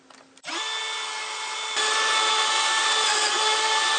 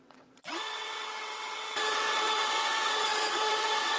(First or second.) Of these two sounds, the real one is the first